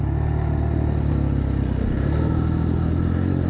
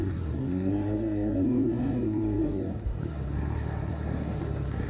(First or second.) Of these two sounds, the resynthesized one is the second